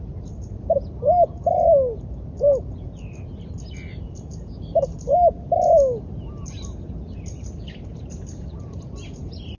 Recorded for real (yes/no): yes